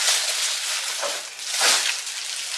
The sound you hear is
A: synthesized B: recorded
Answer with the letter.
B